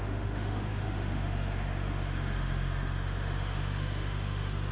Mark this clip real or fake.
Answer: fake